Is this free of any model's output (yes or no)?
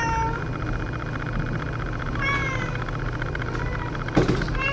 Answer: yes